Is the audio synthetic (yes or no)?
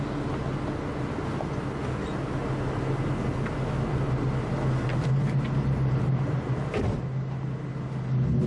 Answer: no